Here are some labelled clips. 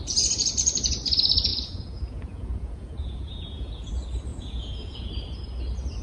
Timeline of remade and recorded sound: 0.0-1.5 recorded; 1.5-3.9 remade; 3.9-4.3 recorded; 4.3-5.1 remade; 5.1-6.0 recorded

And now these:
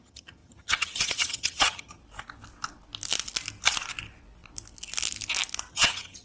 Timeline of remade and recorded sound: 0.0-2.0 remade; 2.0-5.7 recorded; 5.7-6.2 remade

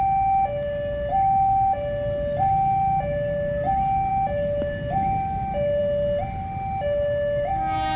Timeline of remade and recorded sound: 0.0-8.0 recorded